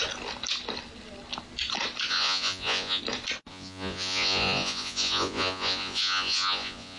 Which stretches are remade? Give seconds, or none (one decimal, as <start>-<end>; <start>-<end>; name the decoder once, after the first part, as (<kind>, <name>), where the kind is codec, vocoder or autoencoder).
2.1-3.0 (vocoder, Vocos); 3.5-7.0